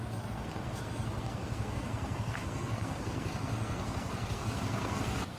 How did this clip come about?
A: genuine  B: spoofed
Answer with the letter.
B